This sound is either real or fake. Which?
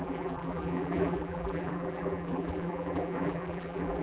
fake